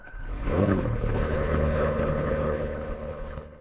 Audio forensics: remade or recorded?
remade